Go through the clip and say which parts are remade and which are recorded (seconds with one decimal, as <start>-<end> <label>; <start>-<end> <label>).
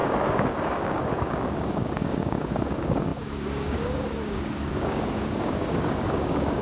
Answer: 0.0-6.6 remade